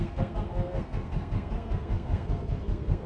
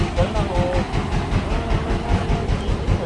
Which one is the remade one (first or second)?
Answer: first